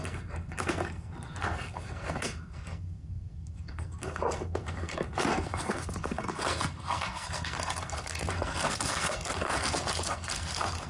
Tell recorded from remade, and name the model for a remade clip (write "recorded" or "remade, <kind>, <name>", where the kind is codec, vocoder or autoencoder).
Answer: remade, codec, SNAC